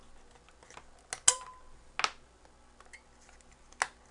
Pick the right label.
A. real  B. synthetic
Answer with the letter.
A